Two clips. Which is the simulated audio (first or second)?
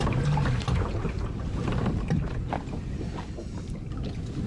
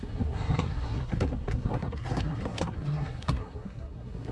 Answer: second